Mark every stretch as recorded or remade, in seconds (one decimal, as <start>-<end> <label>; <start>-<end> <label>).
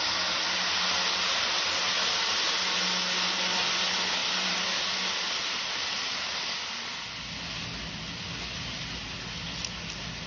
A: 0.0-10.3 recorded